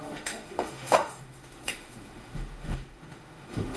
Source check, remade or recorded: remade